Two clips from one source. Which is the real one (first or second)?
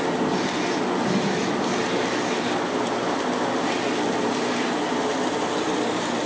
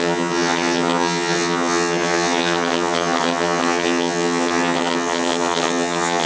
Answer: first